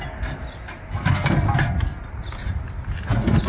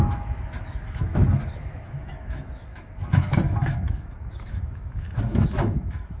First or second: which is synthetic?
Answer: second